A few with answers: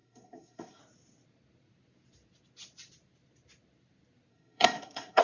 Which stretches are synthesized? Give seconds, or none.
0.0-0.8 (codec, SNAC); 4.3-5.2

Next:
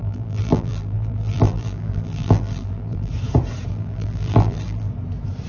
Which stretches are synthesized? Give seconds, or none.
0.0-3.1 (vocoder, BigVGAN v2); 3.7-4.9

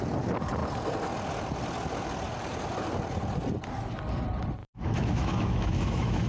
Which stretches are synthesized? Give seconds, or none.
4.6-6.3 (autoencoder, DAC-VAE)

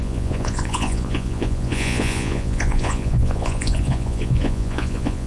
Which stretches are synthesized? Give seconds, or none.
0.0-5.3 (vocoder, Vocos)

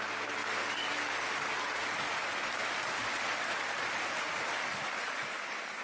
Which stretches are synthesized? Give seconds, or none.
0.0-0.4 (vocoder, BigVGAN v2); 3.9-5.8

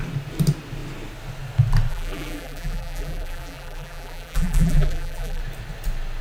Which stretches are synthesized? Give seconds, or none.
1.9-5.4 (vocoder, BigVGAN v2)